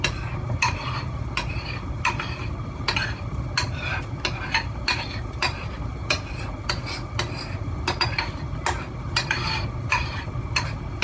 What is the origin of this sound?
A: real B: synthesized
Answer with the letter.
A